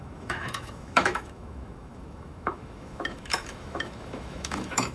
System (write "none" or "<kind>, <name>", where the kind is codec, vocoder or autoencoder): autoencoder, DAC-VAE